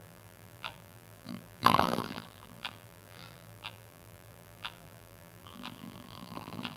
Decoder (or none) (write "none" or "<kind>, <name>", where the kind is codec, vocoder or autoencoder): vocoder, BigVGAN v2